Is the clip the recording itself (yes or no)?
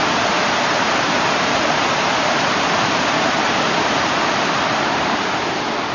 no